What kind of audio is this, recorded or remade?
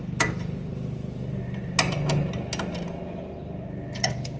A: recorded